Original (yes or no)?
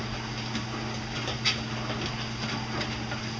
yes